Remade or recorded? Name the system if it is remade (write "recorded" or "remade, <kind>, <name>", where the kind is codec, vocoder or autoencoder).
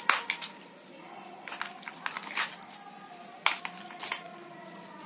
recorded